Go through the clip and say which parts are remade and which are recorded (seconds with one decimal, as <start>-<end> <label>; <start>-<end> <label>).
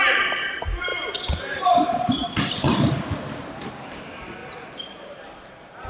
0.0-2.2 remade; 2.2-3.4 recorded; 3.4-4.4 remade; 4.4-5.0 recorded; 5.0-5.9 remade